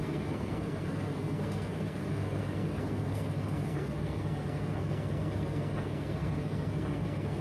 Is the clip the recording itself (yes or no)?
no